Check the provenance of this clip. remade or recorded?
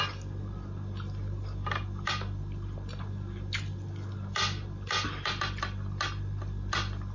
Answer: recorded